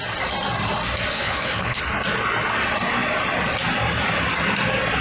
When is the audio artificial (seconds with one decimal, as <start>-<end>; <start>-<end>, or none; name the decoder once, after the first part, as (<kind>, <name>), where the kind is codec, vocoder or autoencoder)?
1.1-1.8 (codec, HILCodec)